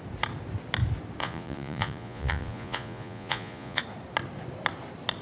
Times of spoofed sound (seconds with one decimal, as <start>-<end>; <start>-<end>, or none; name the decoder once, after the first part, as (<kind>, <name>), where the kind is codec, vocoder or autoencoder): 1.2-3.8 (vocoder, Vocos)